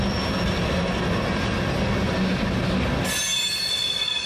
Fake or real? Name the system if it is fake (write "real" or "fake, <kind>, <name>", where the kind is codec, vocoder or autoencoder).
real